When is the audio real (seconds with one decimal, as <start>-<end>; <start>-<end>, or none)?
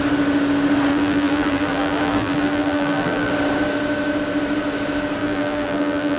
0.0-0.9; 3.3-5.2